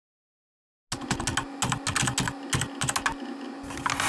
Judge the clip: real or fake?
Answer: real